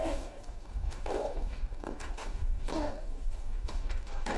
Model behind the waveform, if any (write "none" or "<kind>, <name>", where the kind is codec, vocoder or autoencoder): codec, DAC